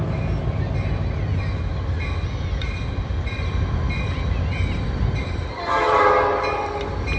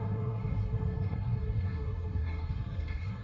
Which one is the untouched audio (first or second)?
first